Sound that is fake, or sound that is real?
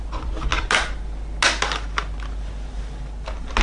real